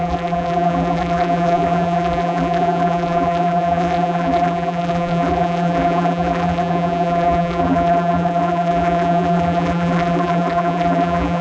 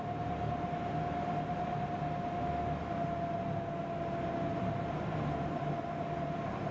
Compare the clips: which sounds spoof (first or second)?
first